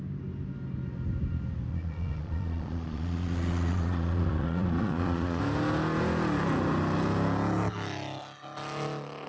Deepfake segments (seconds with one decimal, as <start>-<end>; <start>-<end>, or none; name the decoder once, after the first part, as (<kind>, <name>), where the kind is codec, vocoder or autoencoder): 1.7-5.4 (vocoder, Vocos)